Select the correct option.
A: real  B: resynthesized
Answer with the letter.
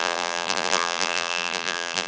B